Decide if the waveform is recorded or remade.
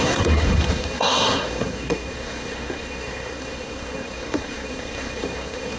remade